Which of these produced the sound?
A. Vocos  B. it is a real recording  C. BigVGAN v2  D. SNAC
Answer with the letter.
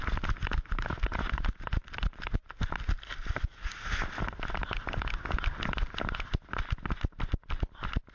B